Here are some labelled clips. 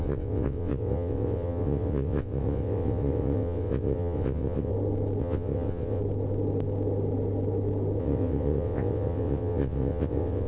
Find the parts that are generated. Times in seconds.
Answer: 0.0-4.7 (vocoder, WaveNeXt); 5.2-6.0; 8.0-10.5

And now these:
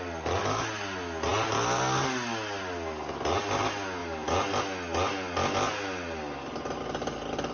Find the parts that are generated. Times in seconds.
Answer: none

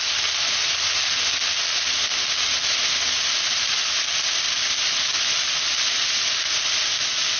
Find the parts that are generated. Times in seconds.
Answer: none

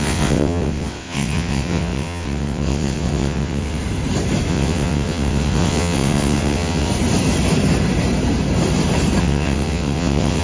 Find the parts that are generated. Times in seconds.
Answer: 0.0-3.8 (vocoder, WaveNeXt); 4.5-6.9; 9.2-10.4